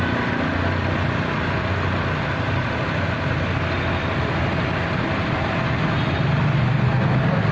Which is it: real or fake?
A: real